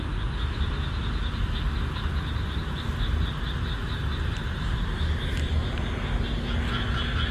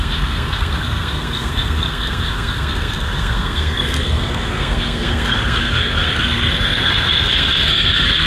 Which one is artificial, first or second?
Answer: second